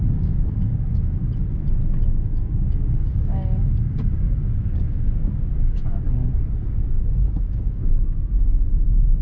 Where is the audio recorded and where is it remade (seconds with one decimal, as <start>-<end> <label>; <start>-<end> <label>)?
0.0-1.2 remade; 1.2-2.2 recorded; 2.2-9.2 remade